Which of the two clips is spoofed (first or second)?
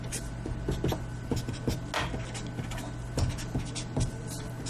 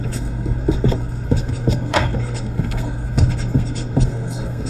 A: second